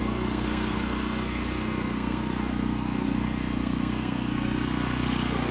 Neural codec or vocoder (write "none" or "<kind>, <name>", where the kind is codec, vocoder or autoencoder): codec, SNAC